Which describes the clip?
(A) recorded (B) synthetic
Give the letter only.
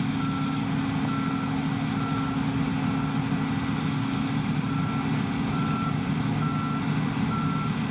A